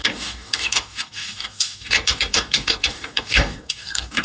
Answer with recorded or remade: remade